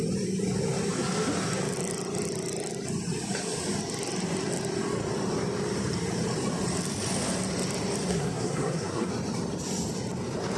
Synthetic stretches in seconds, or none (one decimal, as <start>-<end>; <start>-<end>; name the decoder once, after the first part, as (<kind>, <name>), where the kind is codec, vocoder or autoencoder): 8.1-9.1 (codec, SNAC)